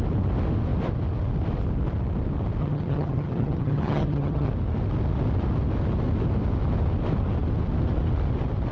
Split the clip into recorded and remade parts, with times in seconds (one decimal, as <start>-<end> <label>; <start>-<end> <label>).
0.0-2.6 recorded; 2.6-4.5 remade; 4.5-8.7 recorded